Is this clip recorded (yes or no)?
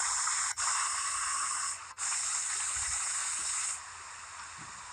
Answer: yes